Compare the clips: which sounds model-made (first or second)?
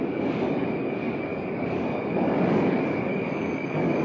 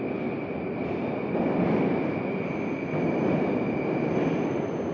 first